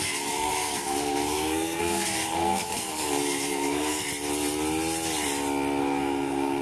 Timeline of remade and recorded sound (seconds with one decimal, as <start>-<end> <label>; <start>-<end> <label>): 0.0-4.1 remade; 4.1-5.8 recorded; 5.8-6.6 remade